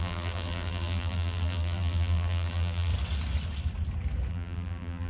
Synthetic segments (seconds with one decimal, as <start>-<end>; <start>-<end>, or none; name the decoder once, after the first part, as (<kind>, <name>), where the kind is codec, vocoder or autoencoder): 0.0-2.9 (vocoder, BigVGAN v2); 4.3-5.1